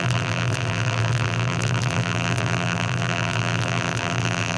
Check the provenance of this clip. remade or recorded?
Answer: remade